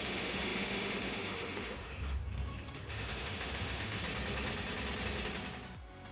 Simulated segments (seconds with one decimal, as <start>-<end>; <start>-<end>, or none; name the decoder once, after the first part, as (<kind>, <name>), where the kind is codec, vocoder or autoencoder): 0.0-2.2 (autoencoder, DAC-VAE); 2.9-4.0